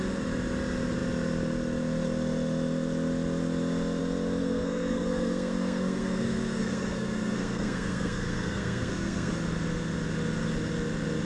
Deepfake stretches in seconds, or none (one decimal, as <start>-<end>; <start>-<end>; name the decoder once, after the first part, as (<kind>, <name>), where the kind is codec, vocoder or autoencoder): 4.4-9.3 (codec, SNAC)